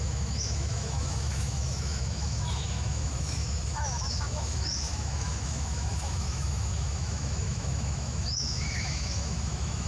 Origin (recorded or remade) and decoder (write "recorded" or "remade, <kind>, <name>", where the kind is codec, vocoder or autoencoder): remade, autoencoder, DAC-VAE